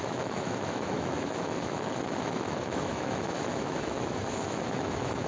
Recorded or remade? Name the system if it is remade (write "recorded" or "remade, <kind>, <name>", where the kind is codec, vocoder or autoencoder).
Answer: remade, autoencoder, DAC-VAE